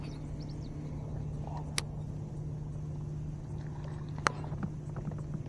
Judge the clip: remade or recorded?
recorded